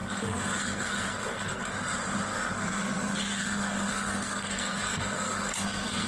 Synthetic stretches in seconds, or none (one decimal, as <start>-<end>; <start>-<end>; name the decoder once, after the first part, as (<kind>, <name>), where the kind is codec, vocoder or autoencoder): 0.0-1.6 (codec, SNAC); 2.3-6.1